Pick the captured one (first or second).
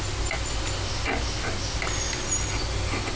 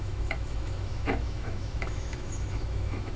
first